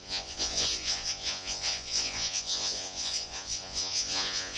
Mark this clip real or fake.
fake